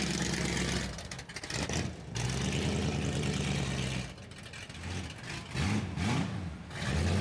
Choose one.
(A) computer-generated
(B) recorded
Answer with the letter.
B